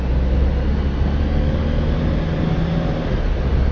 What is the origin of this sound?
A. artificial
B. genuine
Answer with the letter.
B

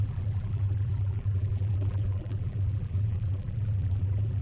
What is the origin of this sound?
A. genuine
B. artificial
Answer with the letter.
B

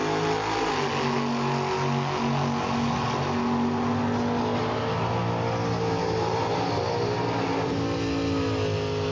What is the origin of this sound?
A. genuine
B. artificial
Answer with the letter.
A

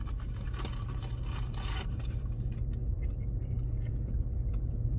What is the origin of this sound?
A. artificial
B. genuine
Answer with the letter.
A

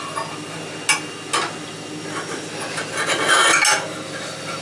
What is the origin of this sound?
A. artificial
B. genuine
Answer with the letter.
B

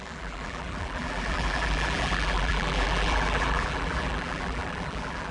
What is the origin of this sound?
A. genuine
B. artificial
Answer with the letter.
B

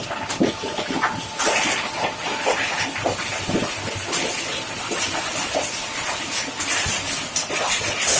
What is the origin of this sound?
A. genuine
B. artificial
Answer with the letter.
A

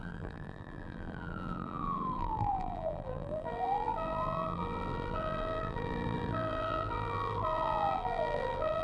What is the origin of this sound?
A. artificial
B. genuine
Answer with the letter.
A